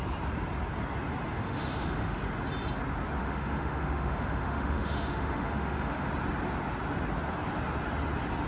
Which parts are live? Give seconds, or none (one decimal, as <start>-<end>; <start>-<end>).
0.0-1.4; 2.2-3.2; 6.1-8.5